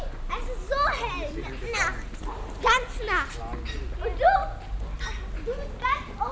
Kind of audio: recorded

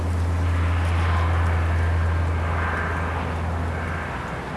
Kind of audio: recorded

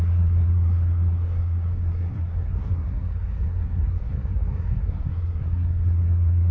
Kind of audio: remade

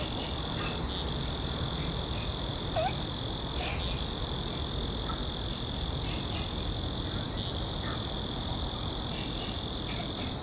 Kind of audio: recorded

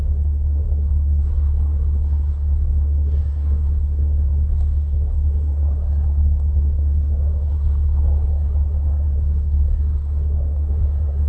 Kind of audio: remade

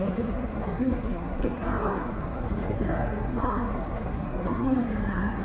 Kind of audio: remade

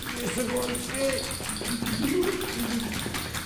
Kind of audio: recorded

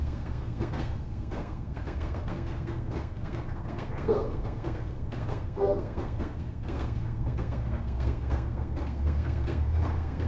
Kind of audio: remade